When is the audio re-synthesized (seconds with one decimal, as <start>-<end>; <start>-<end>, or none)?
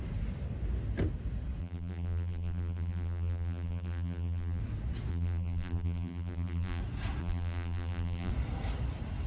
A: 1.6-4.6; 5.1-6.8; 7.2-8.3